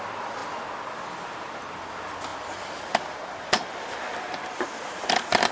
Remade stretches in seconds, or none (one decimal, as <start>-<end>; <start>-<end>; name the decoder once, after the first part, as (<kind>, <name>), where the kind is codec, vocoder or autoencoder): 2.3-5.5 (vocoder, BigVGAN v2)